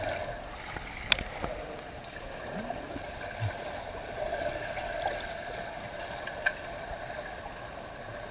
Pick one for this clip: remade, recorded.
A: recorded